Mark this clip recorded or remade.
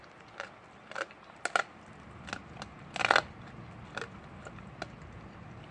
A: recorded